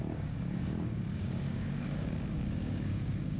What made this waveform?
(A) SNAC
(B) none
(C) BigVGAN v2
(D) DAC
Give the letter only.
D